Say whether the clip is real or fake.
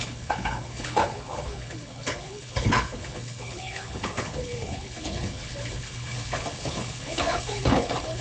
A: fake